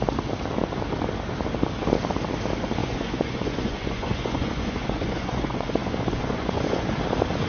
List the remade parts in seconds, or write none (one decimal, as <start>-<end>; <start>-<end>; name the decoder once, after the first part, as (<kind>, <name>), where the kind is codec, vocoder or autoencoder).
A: 2.8-6.9 (vocoder, Vocos)